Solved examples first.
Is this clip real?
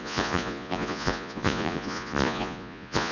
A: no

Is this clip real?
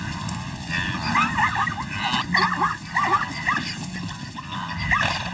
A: yes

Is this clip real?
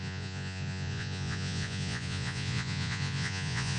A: no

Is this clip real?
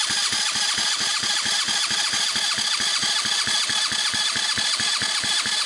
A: yes